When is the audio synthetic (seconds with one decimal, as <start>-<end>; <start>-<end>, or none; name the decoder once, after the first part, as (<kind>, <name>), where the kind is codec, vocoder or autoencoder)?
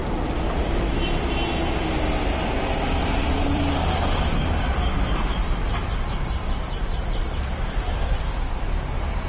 0.0-0.7 (vocoder, BigVGAN v2); 3.0-3.7; 5.3-8.1